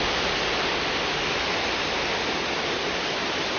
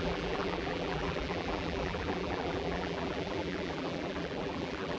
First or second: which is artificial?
second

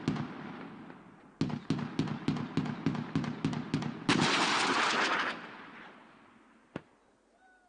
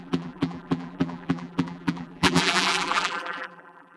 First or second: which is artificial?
second